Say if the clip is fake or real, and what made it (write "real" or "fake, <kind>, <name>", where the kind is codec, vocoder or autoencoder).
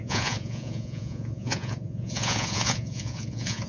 fake, vocoder, Vocos